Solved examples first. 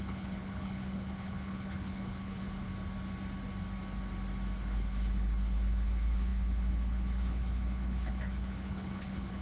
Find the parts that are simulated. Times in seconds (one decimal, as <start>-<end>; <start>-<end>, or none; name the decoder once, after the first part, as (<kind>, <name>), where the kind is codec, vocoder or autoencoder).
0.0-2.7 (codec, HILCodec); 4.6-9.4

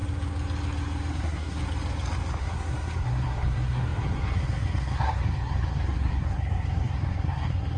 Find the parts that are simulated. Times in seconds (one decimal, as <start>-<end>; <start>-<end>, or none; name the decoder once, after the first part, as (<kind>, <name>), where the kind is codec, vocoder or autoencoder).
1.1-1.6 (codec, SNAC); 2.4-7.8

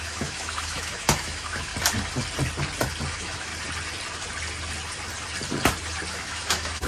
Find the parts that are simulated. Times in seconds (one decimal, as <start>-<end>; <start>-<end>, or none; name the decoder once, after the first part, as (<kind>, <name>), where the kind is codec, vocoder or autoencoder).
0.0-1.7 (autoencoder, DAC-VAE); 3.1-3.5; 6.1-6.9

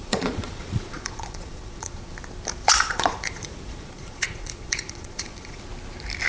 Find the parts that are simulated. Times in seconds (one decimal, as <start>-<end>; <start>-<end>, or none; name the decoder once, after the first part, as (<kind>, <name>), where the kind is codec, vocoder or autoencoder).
0.0-2.1 (vocoder, Vocos); 2.6-5.6